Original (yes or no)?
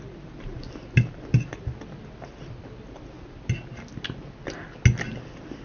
yes